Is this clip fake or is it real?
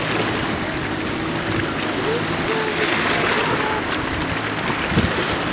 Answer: real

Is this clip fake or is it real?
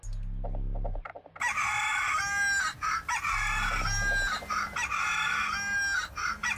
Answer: real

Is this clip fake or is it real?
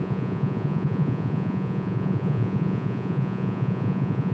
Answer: fake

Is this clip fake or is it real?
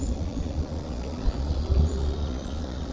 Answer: fake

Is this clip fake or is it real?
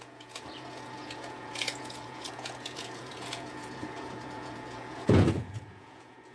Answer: fake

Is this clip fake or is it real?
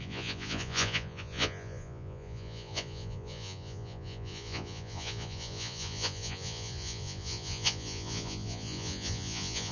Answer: fake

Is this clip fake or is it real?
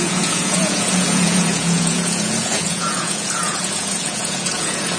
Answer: fake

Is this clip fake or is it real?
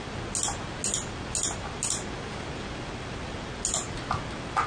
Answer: real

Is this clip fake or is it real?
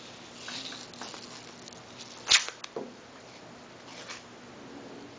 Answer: real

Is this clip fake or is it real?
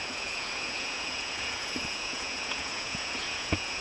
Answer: fake